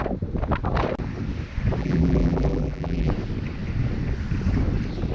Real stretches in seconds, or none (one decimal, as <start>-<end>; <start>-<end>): 0.0-1.8; 3.1-5.1